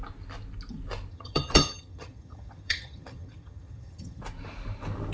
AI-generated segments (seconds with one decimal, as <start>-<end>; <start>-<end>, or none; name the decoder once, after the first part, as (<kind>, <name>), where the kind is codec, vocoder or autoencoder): 1.1-4.2 (vocoder, HiFi-GAN)